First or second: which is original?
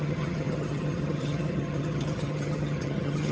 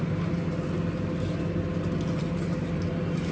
second